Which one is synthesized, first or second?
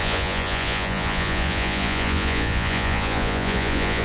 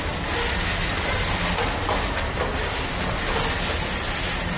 first